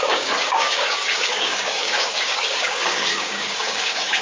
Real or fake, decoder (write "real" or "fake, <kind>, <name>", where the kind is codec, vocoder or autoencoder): fake, codec, DAC